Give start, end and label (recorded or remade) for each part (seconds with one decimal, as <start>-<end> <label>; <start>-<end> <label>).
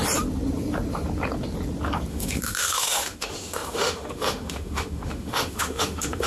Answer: 0.0-2.1 recorded; 2.1-6.3 remade